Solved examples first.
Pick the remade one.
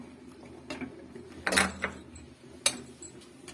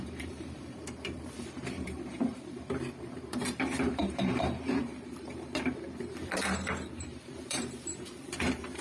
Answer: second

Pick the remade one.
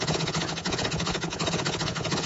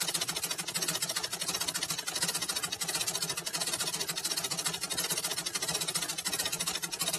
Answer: first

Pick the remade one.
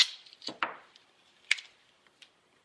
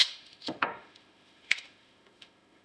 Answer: second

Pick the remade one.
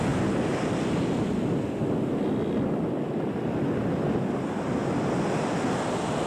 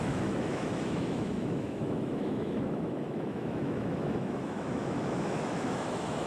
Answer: second